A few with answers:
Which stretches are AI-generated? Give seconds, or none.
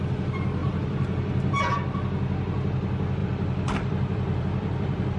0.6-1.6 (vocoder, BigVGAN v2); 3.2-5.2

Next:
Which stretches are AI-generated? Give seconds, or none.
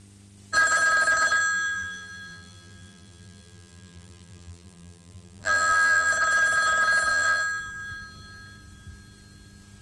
1.4-6.1 (vocoder, BigVGAN v2); 7.1-7.6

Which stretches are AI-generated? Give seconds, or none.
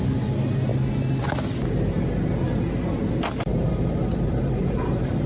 3.5-5.3 (vocoder, BigVGAN v2)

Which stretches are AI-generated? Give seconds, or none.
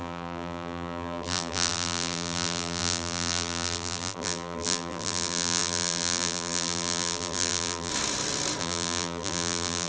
0.0-7.9 (vocoder, BigVGAN v2); 8.6-9.9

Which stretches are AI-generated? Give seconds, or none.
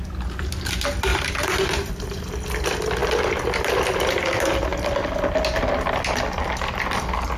1.1-1.9 (vocoder, BigVGAN v2)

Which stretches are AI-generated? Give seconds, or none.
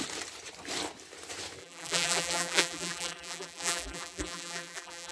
1.6-5.1 (vocoder, BigVGAN v2)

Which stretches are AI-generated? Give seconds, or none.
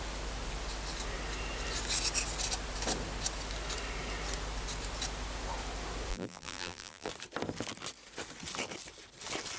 6.1-7.1 (vocoder, BigVGAN v2)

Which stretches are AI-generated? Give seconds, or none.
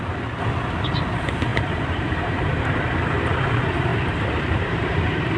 1.5-2.8 (vocoder, BigVGAN v2); 3.9-5.4